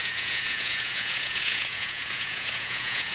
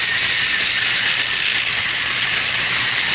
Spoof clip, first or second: first